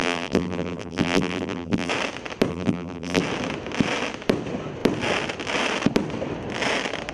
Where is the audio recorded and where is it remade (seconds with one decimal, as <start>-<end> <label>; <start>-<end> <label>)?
0.0-1.9 remade; 1.9-2.5 recorded; 2.5-3.2 remade; 3.2-7.1 recorded